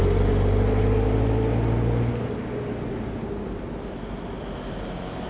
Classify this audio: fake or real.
real